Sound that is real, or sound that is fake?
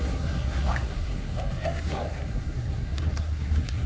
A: fake